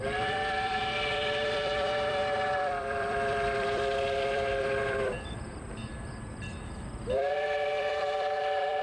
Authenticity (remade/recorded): remade